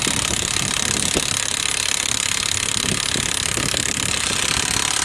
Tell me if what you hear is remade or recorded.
recorded